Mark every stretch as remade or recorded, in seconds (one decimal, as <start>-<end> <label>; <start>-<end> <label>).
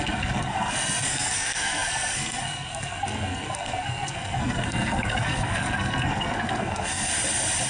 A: 0.0-7.1 remade; 7.1-7.7 recorded